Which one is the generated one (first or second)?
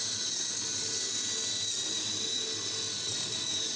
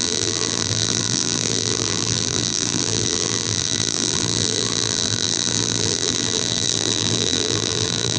second